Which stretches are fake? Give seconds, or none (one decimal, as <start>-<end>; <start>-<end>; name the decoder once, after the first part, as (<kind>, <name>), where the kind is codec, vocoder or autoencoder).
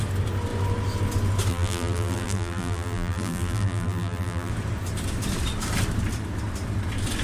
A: 1.5-4.5 (vocoder, BigVGAN v2)